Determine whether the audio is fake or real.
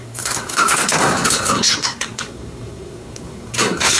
fake